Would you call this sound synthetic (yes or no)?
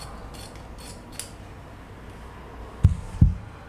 no